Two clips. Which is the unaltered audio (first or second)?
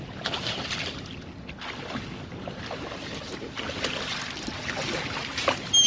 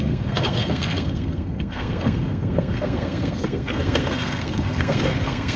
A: first